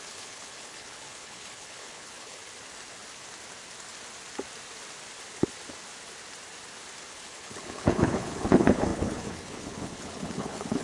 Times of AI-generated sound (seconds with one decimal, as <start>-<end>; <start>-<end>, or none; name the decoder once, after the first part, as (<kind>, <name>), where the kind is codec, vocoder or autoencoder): 0.0-2.4 (codec, HILCodec); 7.1-10.8